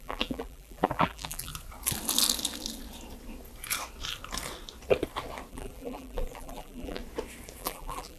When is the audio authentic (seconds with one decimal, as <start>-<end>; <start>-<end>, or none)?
1.5-5.5; 7.0-7.6